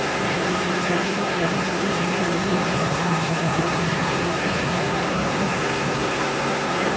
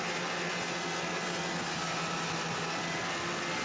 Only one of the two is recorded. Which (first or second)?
second